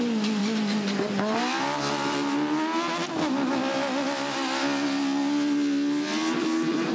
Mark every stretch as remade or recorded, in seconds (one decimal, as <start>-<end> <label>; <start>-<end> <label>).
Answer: 0.0-6.9 recorded